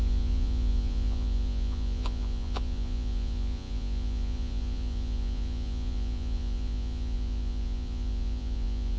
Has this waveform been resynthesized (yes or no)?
yes